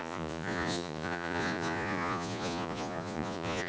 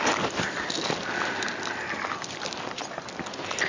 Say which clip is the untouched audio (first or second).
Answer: second